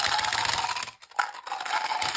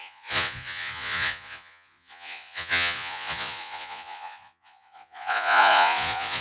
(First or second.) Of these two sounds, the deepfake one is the second